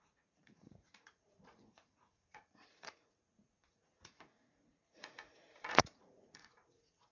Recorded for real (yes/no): no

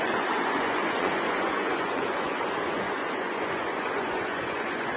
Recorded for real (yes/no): no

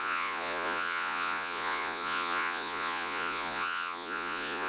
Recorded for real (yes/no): no